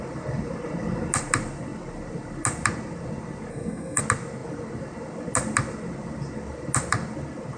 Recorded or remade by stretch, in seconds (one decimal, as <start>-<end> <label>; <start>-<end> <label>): 0.0-3.5 recorded; 3.5-4.0 remade; 4.0-7.6 recorded

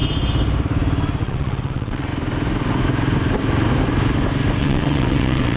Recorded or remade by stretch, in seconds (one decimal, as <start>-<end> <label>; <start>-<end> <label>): 0.0-1.2 recorded; 1.2-2.1 remade; 2.1-4.6 recorded; 4.6-5.6 remade

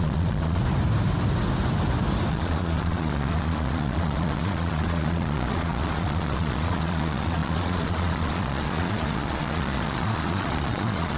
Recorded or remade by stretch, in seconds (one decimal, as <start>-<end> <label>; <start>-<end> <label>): 0.0-0.6 remade; 0.6-2.3 recorded; 2.3-11.2 remade

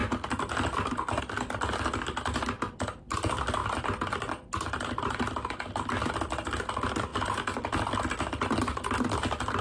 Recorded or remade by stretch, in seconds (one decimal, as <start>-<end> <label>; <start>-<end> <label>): 0.0-9.6 recorded